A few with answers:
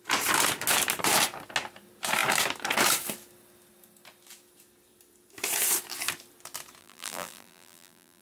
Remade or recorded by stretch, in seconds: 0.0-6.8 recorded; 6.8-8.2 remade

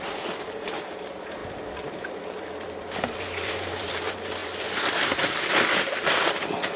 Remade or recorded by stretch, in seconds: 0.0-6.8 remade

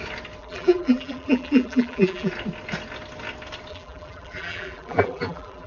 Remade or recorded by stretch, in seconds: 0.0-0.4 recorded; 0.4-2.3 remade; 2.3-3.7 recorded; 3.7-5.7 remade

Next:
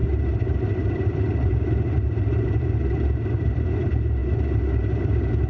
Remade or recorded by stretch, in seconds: 0.0-5.5 remade

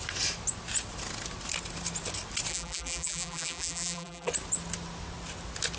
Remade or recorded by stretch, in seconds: 0.0-2.5 recorded; 2.5-4.3 remade; 4.3-5.8 recorded

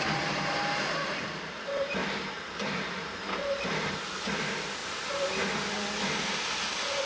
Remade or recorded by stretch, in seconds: 0.0-2.0 recorded; 2.0-3.9 remade; 3.9-7.1 recorded